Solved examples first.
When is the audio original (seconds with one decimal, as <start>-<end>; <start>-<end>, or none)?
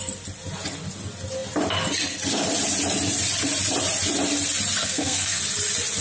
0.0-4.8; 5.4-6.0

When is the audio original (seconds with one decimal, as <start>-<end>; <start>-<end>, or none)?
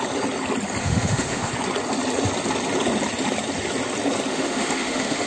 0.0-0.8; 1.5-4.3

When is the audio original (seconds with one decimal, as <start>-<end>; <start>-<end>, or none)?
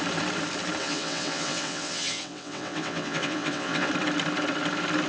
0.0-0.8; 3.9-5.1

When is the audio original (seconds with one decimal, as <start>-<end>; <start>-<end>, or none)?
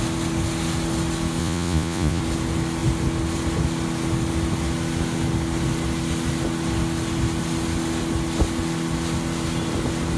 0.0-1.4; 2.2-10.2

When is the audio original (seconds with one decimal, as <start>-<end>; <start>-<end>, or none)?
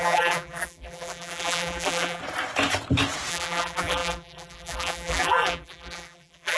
2.2-3.3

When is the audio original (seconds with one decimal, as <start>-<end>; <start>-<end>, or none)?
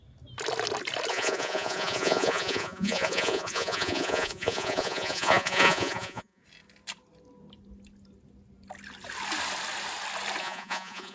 0.0-1.1; 6.4-10.4